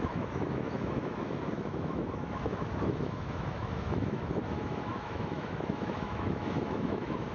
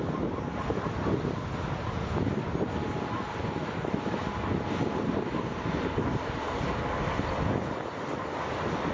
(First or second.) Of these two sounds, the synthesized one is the first